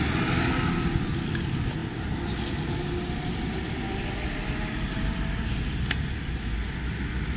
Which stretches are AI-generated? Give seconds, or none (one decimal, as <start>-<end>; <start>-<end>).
none